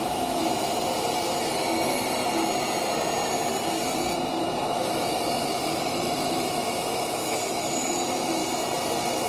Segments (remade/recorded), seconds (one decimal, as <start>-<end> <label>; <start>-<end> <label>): 0.0-0.4 remade; 0.4-4.4 recorded; 4.4-8.4 remade; 8.4-9.3 recorded